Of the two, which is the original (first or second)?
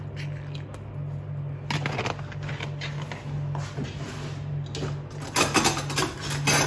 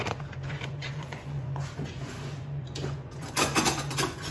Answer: first